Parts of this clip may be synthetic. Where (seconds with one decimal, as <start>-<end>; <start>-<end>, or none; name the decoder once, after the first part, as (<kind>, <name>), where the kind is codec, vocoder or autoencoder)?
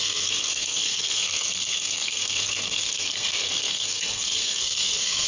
0.0-5.3 (codec, SNAC)